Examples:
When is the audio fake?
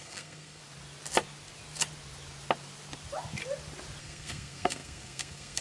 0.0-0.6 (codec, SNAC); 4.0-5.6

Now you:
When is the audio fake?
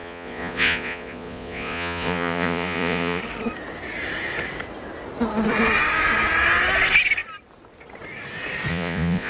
0.0-3.2 (vocoder, Vocos); 8.7-9.3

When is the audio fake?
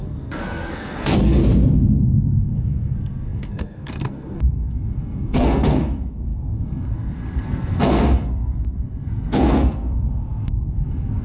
0.0-1.4 (codec, SNAC); 2.0-11.2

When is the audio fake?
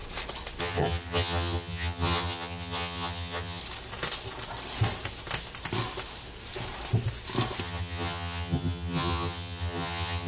0.6-3.6 (vocoder, HiFi-GAN); 7.6-10.3